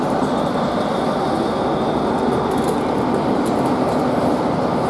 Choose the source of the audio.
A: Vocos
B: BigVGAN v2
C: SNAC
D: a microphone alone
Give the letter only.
D